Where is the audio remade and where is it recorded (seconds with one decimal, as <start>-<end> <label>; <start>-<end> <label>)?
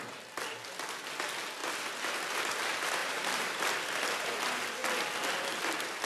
0.0-3.0 recorded; 3.0-3.6 remade; 3.6-6.1 recorded